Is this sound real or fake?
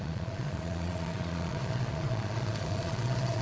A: fake